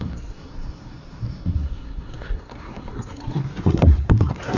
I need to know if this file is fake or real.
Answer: fake